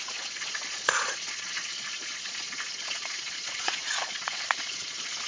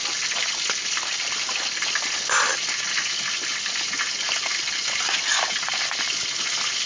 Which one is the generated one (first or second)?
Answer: first